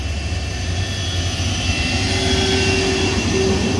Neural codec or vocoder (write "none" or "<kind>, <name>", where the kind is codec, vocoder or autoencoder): none